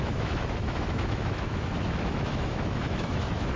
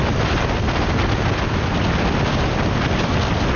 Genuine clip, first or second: second